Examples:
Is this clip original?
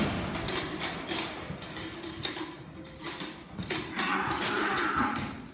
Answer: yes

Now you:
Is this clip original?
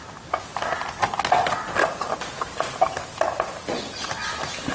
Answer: yes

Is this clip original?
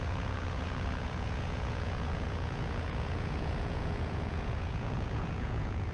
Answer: no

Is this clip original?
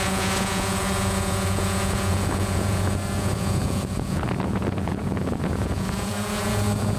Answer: no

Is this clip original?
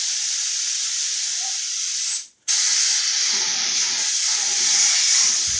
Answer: yes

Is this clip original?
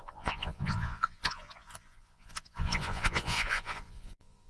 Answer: no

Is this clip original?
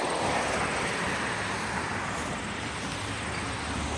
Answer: yes